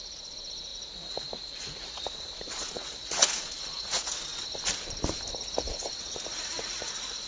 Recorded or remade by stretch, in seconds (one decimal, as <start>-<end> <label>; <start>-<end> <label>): 0.0-4.3 remade; 4.3-5.4 recorded; 5.4-7.3 remade